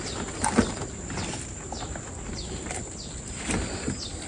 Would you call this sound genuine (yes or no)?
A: yes